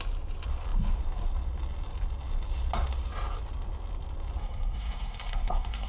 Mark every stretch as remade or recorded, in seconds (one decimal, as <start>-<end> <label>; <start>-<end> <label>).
0.0-4.4 recorded; 4.4-5.9 remade